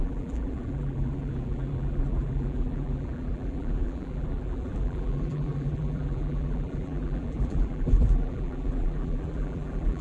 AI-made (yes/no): yes